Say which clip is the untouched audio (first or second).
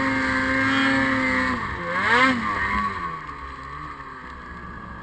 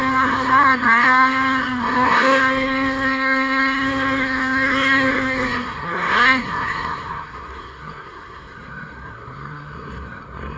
first